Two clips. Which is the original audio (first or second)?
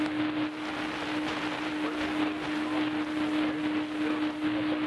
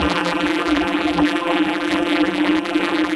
first